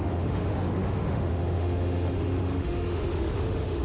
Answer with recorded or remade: remade